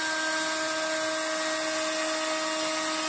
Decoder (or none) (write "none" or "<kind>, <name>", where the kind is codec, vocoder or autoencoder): none